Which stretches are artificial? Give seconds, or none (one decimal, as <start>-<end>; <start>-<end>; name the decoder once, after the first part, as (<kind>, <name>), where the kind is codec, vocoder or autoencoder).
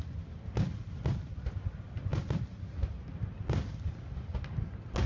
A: none